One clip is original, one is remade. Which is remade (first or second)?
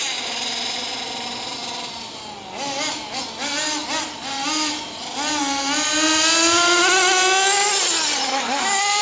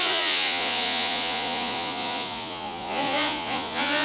second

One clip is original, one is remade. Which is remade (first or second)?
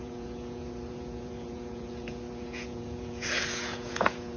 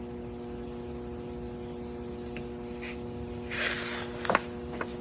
first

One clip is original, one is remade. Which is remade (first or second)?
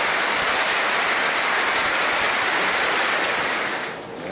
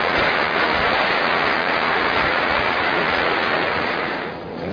second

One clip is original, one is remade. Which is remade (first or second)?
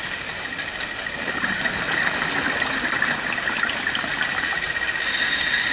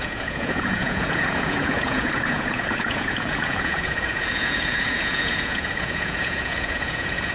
second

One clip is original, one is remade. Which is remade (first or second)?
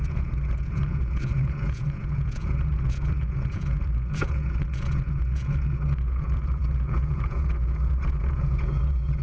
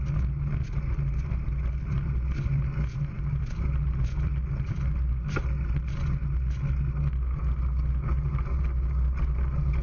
first